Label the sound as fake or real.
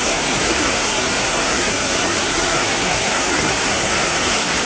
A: fake